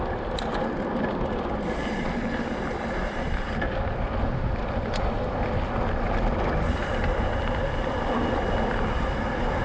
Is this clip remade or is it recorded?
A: remade